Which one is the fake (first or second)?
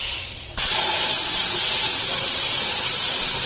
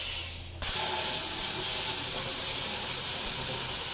first